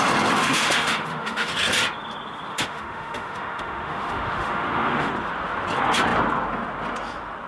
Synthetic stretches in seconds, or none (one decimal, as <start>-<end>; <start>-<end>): 0.4-1.5; 2.5-5.1